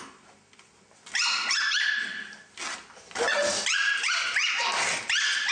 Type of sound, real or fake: real